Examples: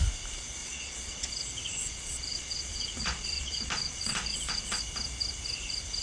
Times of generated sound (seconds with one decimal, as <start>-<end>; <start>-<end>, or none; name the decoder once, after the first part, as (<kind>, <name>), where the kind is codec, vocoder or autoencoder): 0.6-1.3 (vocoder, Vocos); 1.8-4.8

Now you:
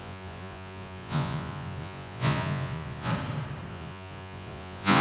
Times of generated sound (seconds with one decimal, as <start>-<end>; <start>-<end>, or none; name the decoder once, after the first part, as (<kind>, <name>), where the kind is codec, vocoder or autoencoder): 0.0-3.1 (vocoder, Vocos); 3.7-5.0

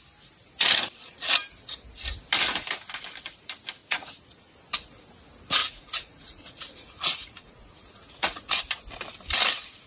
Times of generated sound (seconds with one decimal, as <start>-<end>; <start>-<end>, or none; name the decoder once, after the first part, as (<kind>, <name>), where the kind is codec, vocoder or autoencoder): 3.8-4.5 (vocoder, Vocos); 5.6-8.6